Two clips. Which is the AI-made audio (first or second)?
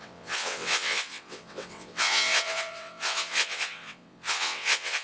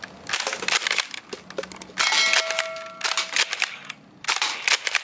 first